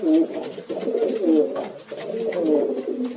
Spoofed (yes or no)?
no